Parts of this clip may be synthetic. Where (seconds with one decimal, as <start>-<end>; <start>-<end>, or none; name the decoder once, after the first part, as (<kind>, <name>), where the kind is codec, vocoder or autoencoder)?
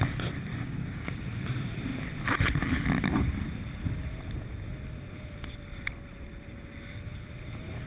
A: 0.5-1.2 (codec, DAC)